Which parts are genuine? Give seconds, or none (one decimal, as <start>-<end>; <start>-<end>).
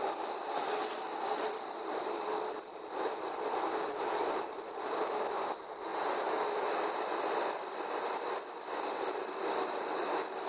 none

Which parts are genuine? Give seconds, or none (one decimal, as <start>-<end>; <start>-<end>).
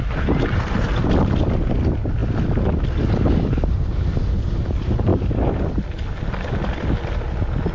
0.0-7.7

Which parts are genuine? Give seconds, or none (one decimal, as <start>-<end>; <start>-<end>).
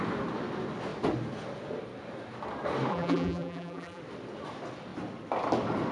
0.0-2.9; 4.0-5.9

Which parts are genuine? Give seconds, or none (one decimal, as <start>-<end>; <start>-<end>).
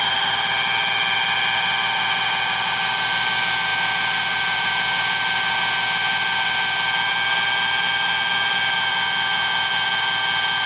0.0-10.7